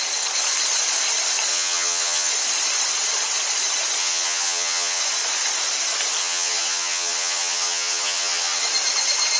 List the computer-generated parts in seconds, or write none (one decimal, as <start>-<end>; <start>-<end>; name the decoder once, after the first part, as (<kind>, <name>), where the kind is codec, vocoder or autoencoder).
1.5-2.3 (vocoder, HiFi-GAN); 4.0-5.0; 6.2-8.6